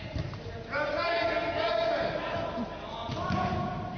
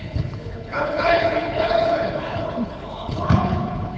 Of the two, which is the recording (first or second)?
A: first